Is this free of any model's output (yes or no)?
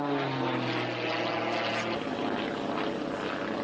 yes